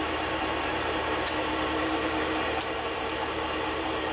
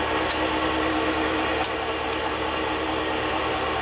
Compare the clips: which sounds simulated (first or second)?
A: first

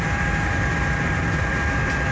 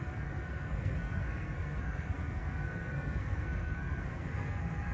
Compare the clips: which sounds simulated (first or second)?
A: second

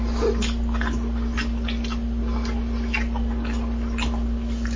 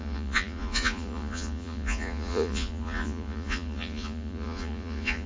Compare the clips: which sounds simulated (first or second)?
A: second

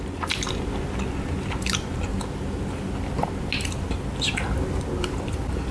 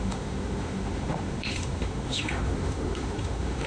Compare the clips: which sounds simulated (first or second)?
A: second